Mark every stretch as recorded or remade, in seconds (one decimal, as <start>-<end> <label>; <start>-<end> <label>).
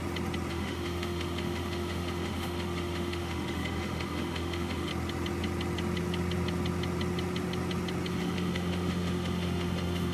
0.0-0.5 recorded; 0.5-4.9 remade; 4.9-8.1 recorded; 8.1-10.1 remade